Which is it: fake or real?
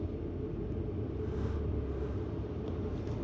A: real